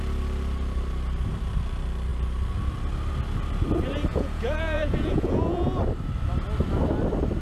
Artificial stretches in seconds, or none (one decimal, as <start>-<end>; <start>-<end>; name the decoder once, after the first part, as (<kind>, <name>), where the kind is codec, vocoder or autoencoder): 4.1-5.8 (vocoder, Vocos)